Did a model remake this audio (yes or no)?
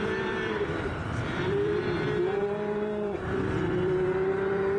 yes